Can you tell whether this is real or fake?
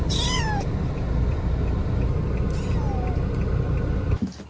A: real